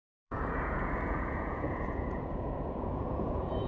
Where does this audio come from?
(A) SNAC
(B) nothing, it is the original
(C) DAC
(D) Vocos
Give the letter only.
D